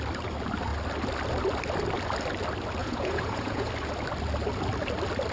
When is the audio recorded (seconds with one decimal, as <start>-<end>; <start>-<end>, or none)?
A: 0.0-2.8; 3.7-5.3